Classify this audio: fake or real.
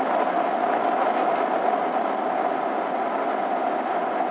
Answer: real